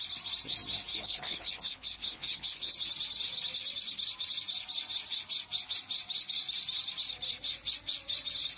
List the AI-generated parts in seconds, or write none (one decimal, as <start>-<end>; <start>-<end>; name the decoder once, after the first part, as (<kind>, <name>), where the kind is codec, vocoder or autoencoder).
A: 0.9-2.7 (codec, HILCodec)